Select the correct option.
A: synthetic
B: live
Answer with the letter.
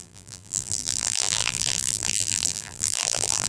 A